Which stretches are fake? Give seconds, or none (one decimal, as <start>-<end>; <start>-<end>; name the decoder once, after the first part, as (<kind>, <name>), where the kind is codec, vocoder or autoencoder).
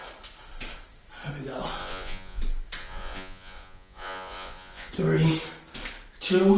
1.8-2.4 (vocoder, Vocos); 2.8-4.9